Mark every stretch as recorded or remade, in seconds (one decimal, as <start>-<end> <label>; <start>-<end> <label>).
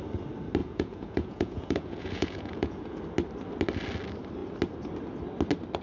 0.0-0.6 recorded; 0.6-3.0 remade; 3.0-5.8 recorded